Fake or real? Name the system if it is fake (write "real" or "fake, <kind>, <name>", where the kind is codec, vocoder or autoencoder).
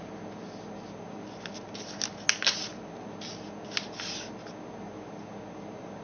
real